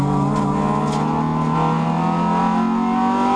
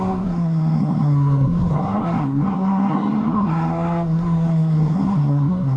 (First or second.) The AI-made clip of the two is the second